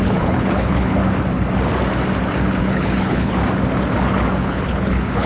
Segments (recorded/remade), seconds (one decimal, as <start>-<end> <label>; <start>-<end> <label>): 0.0-1.0 remade; 1.0-2.6 recorded; 2.6-3.4 remade; 3.4-4.3 recorded; 4.3-5.3 remade